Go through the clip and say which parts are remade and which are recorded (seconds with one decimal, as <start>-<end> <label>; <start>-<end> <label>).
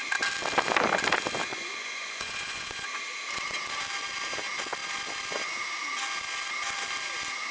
0.0-1.5 recorded; 1.5-3.0 remade; 3.0-7.5 recorded